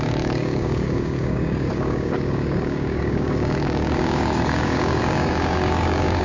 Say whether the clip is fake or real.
fake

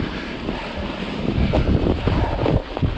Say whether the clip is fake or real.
real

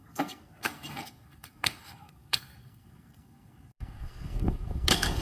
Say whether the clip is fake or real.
fake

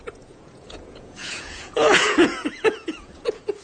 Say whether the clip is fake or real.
fake